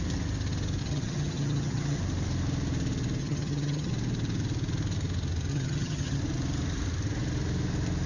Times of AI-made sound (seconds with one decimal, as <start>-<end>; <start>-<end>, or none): 0.8-2.0; 3.2-3.9; 5.5-6.2